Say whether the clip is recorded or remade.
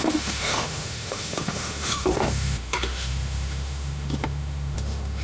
remade